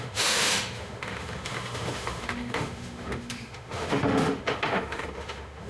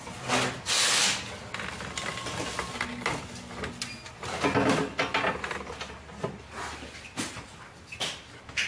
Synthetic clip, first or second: first